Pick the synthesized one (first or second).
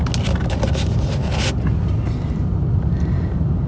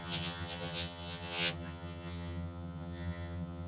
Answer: second